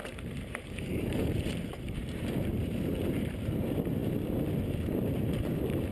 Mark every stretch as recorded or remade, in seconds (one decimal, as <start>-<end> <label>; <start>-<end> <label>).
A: 0.0-3.5 remade; 3.5-5.9 recorded